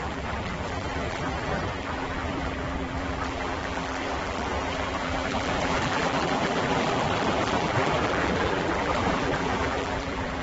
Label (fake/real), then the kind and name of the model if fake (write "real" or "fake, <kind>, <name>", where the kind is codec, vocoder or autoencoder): fake, vocoder, BigVGAN v2